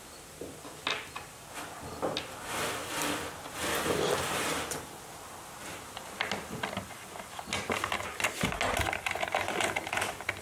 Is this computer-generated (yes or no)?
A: no